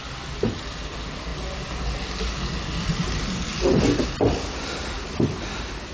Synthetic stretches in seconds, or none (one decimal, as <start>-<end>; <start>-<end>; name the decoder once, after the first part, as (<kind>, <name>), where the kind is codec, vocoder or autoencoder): none